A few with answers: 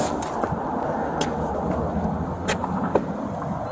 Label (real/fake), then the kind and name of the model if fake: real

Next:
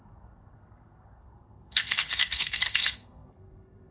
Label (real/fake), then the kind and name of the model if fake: fake, codec, SNAC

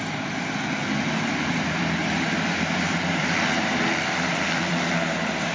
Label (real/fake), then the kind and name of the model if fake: fake, vocoder, BigVGAN v2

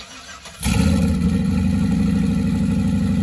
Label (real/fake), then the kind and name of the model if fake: real